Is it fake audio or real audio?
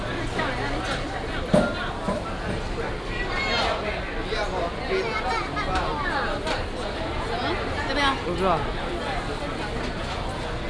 real